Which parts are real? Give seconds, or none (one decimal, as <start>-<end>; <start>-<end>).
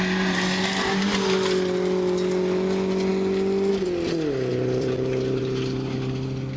0.0-4.5; 5.4-6.6